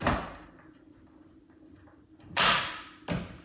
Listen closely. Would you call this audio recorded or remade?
recorded